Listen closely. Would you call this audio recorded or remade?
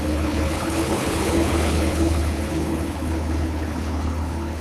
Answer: remade